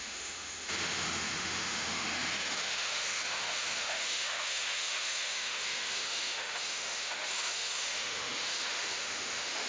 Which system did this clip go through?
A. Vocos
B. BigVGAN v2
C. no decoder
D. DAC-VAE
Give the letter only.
D